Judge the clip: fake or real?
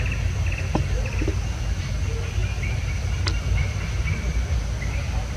real